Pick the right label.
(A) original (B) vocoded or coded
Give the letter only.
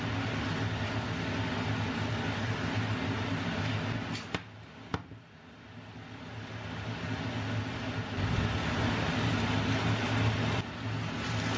A